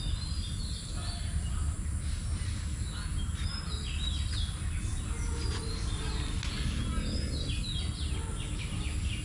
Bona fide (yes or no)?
yes